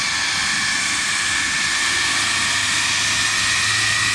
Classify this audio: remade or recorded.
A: recorded